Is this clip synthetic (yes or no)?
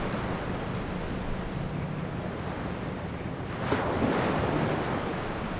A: no